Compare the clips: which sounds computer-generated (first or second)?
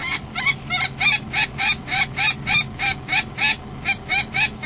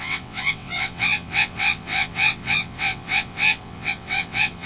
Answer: second